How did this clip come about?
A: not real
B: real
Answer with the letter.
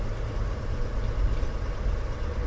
B